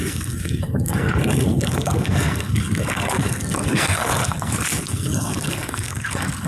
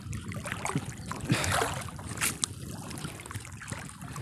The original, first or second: second